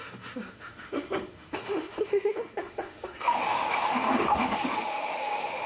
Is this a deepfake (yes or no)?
yes